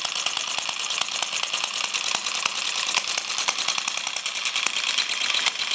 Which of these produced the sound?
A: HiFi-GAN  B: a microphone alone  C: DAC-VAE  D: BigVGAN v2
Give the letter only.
B